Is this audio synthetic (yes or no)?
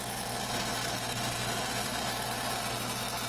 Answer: no